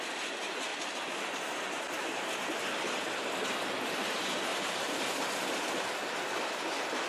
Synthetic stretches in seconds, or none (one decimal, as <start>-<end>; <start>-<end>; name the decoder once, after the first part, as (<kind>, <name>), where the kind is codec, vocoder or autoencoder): 4.5-5.3 (vocoder, BigVGAN v2)